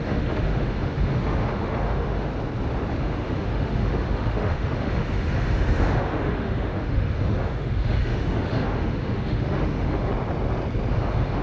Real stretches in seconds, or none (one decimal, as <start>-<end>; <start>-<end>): 2.3-2.9; 10.1-10.9